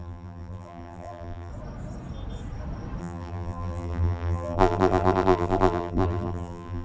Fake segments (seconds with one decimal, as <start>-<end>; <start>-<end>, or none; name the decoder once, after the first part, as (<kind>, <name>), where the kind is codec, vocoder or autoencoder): 0.0-1.5 (vocoder, BigVGAN v2); 3.0-6.8